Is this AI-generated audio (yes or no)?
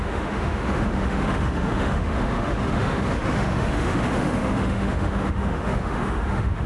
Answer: yes